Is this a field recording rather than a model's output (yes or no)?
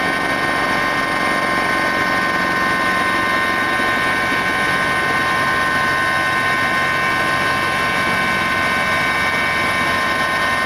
yes